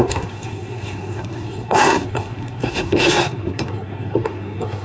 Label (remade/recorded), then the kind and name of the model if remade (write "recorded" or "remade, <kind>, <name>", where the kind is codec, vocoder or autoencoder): remade, codec, SNAC